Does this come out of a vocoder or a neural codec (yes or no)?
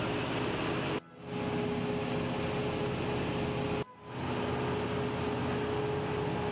no